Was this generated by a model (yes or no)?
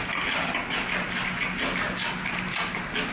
no